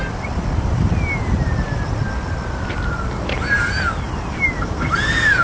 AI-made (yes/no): no